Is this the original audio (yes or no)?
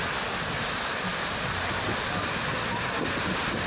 yes